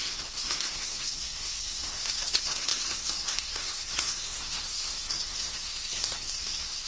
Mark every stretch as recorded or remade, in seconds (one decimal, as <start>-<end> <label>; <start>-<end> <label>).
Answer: 0.0-6.9 remade